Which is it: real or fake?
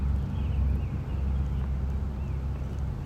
real